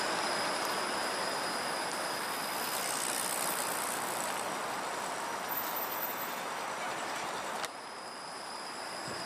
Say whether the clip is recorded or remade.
remade